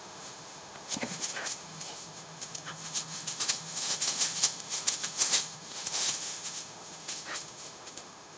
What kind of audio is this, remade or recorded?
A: remade